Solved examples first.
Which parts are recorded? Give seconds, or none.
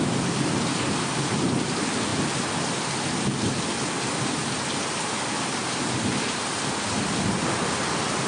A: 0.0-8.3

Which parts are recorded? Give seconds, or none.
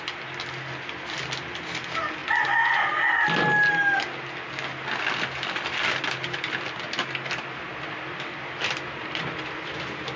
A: 0.0-10.2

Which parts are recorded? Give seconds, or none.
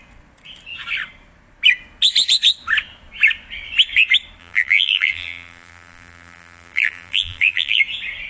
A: 0.0-4.4; 7.8-8.3